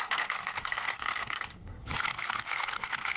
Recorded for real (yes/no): no